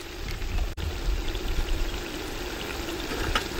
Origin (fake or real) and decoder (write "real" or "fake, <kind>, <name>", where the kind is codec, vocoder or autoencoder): real